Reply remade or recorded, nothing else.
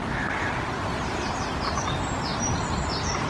recorded